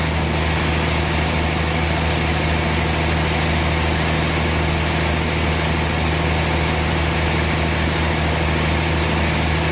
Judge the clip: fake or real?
real